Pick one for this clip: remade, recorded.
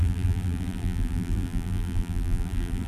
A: remade